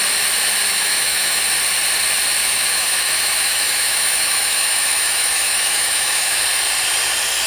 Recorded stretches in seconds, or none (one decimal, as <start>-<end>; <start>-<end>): 0.0-0.7; 1.4-2.4; 6.4-7.5